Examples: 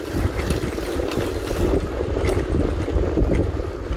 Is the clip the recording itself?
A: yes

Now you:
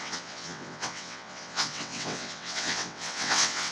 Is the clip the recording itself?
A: no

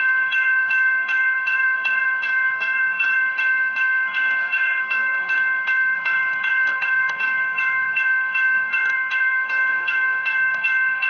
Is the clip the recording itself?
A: no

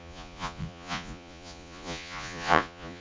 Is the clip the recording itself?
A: no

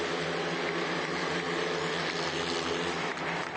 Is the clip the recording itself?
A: yes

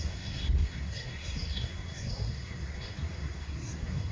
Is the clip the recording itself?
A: no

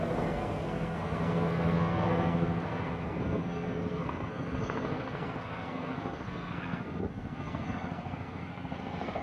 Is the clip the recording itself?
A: no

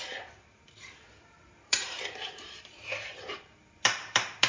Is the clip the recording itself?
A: no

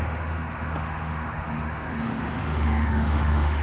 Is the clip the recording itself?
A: no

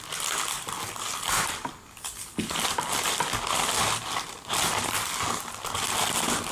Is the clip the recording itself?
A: no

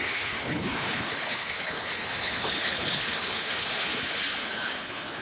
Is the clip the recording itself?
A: no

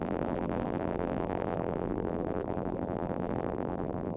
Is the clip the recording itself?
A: no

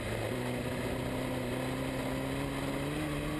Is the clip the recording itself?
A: yes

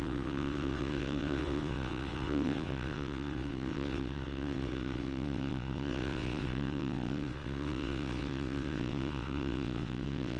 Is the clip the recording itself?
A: no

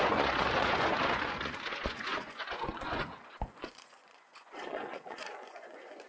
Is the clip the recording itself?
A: no